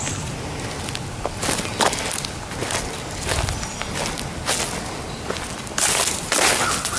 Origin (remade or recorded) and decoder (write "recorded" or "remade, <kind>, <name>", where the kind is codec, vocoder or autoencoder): recorded